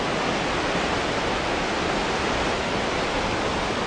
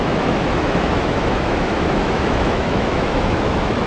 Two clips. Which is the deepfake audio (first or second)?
second